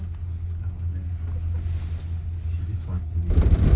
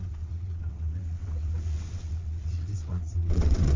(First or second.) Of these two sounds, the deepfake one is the second